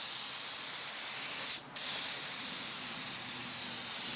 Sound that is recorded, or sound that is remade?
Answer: recorded